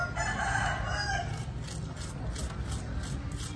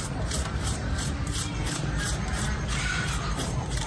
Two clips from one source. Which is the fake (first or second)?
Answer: second